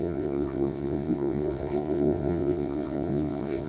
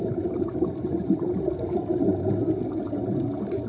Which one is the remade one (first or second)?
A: first